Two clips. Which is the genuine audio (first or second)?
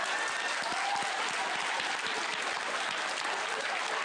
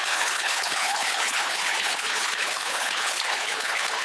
first